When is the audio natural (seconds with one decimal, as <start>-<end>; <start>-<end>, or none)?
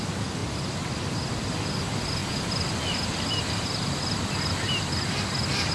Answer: 0.0-5.7